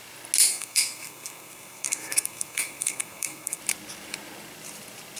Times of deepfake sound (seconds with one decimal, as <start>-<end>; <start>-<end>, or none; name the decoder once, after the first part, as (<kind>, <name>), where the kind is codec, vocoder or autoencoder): 0.5-3.6 (codec, SNAC)

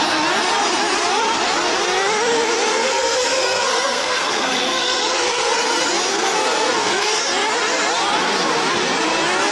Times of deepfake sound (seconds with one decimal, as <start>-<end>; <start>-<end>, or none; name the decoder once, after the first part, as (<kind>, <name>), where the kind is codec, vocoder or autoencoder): 2.7-5.5 (codec, SNAC); 6.1-7.2

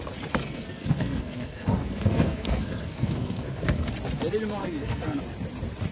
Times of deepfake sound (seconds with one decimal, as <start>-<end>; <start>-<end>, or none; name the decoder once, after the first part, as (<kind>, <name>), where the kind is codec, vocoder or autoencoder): 0.4-3.9 (codec, SNAC); 4.6-5.2

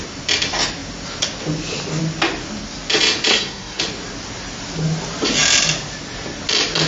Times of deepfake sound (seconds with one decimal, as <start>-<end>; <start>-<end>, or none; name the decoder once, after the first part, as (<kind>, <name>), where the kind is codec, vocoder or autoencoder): 3.3-3.8 (codec, SNAC)

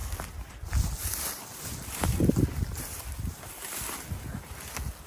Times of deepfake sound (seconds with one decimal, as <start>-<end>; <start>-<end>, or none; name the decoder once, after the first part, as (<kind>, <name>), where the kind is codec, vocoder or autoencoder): none

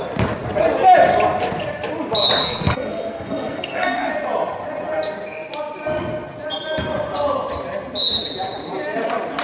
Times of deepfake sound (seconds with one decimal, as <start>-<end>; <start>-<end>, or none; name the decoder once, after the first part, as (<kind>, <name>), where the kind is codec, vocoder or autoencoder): 2.4-4.1 (codec, SNAC)

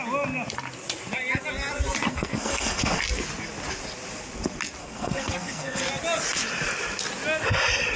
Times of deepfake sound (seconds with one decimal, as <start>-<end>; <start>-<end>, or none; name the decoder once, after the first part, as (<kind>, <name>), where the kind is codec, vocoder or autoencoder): 2.1-3.0 (codec, SNAC); 4.8-5.8